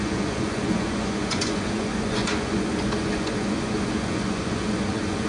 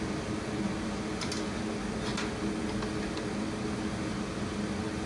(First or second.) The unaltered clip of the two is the second